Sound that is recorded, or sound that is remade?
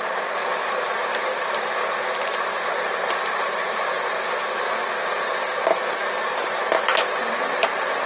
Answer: recorded